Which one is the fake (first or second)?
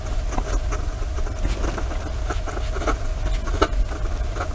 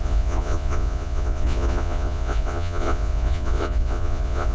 second